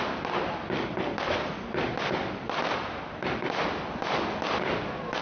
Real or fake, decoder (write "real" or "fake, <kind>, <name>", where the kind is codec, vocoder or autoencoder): real